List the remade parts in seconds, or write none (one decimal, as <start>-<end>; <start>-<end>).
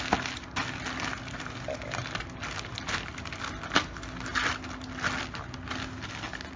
none